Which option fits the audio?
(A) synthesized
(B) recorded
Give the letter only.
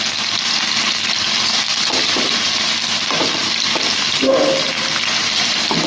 B